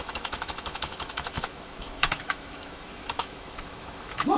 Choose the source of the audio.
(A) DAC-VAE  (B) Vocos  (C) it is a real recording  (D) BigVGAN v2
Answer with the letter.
A